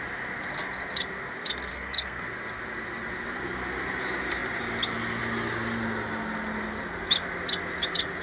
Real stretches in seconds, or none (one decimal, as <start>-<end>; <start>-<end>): 0.0-1.7; 2.2-8.2